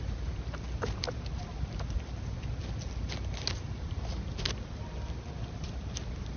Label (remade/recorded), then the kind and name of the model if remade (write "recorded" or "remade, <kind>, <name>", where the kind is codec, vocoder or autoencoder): recorded